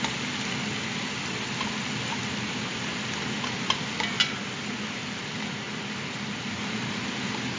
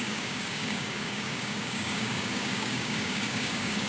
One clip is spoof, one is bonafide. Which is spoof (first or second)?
second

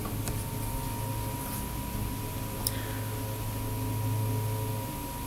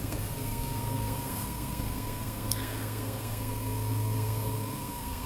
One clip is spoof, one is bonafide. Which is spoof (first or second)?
second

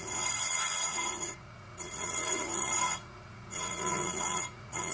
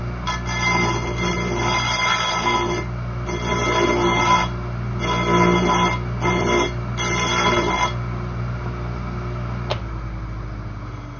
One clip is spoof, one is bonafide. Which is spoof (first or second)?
first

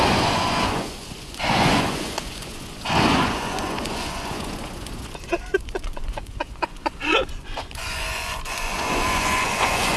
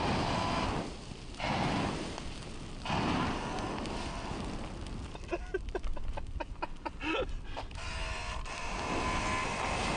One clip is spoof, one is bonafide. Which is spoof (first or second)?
first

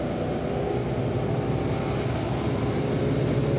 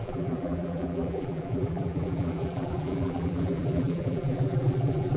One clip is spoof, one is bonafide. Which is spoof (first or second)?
second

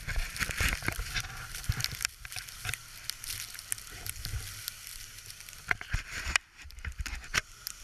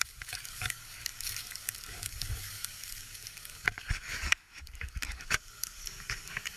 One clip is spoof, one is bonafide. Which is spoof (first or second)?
second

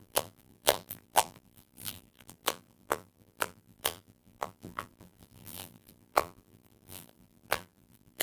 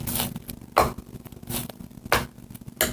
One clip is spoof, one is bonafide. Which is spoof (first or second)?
first